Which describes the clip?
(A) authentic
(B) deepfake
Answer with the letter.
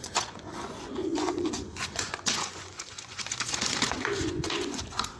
B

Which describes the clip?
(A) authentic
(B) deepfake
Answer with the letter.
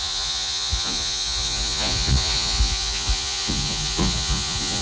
B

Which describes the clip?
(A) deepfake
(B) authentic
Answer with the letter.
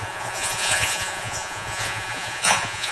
A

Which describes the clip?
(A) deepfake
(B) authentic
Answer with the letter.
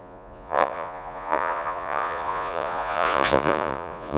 A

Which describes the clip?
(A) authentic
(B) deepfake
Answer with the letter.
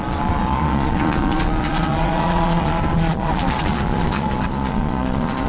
B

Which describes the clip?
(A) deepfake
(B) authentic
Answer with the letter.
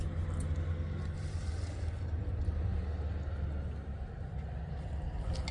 B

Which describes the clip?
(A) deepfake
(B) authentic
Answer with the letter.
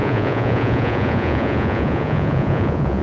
A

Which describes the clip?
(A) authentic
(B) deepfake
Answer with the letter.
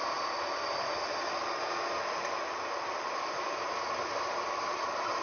A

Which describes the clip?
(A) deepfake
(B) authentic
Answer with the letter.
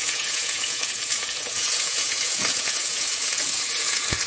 A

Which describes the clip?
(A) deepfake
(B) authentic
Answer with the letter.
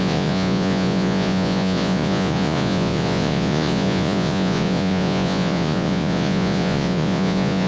A